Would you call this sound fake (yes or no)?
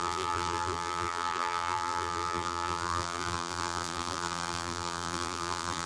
yes